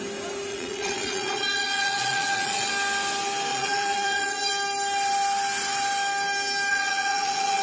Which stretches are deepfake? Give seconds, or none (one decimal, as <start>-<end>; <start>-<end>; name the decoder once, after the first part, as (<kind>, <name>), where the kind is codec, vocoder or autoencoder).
0.5-2.7 (vocoder, Vocos); 3.5-4.5; 6.7-7.6